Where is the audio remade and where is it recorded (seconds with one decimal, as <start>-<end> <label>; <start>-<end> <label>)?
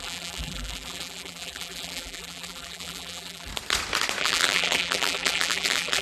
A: 0.0-3.5 remade; 3.5-4.2 recorded; 4.2-6.0 remade